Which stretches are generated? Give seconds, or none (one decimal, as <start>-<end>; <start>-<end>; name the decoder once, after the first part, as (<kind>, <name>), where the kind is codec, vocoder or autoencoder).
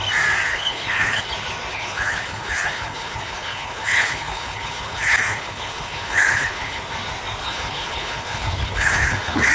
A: 0.5-1.2 (codec, HILCodec); 1.7-6.8; 7.4-9.5